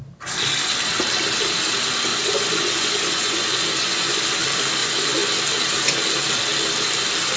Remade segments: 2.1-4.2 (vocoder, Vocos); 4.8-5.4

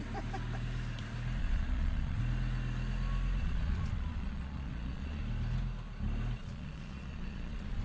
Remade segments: 1.4-2.2 (vocoder, Vocos); 3.4-5.2; 6.4-7.8

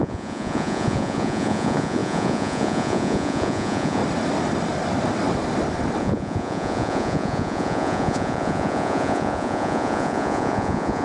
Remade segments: 0.0-4.0 (vocoder, Vocos); 6.0-11.0

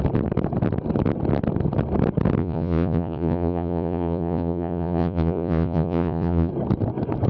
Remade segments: 2.4-6.5 (vocoder, Vocos)

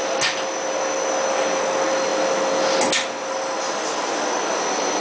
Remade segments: none

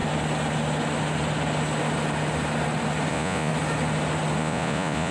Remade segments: 3.1-3.5 (vocoder, Vocos); 4.4-5.1

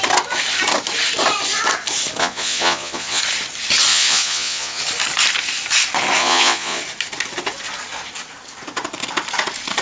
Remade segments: 2.2-3.2 (vocoder, Vocos); 3.9-4.8; 6.2-6.8

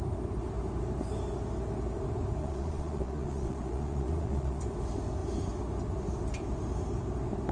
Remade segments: 2.4-4.6 (vocoder, Vocos)